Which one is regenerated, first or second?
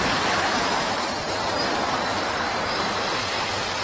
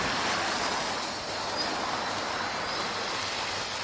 first